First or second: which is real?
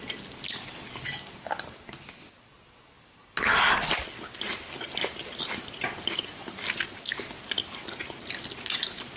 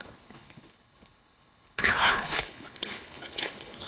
first